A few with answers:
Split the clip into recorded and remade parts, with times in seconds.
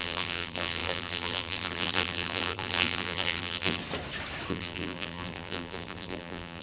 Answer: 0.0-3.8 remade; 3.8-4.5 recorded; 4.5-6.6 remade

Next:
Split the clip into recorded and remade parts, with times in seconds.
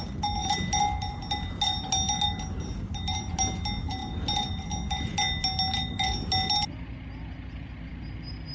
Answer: 0.0-8.5 recorded